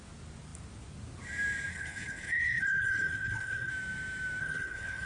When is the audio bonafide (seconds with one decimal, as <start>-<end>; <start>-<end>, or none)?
0.0-1.7; 3.7-4.4